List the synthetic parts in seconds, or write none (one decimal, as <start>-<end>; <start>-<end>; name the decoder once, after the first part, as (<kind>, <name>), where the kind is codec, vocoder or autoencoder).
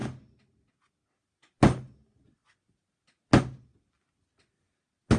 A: none